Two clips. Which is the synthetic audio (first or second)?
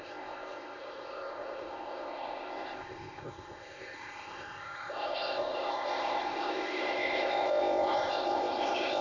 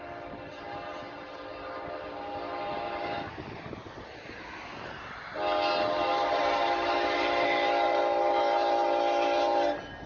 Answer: first